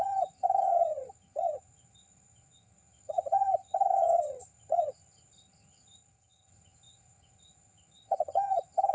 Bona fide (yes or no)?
no